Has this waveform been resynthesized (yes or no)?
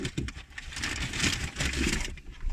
no